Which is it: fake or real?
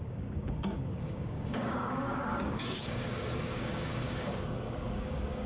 fake